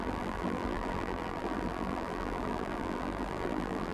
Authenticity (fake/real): fake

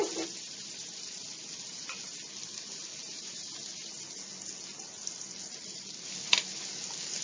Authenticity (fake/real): real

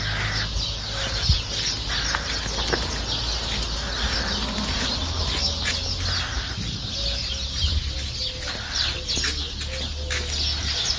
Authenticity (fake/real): real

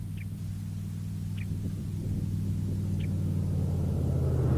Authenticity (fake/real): real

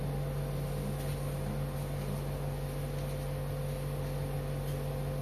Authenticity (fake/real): real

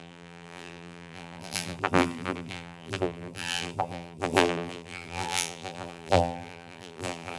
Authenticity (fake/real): fake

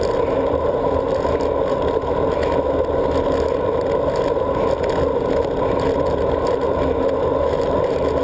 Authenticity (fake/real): real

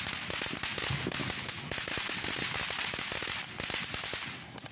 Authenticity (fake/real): real